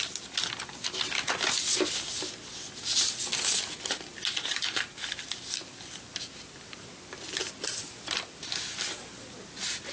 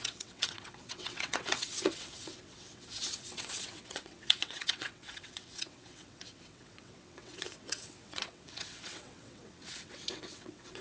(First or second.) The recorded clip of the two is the first